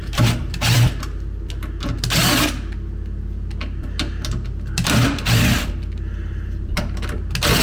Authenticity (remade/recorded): recorded